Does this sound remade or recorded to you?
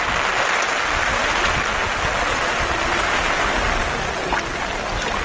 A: recorded